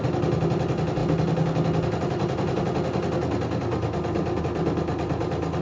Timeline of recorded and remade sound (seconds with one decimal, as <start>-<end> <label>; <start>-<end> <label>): 0.0-5.6 recorded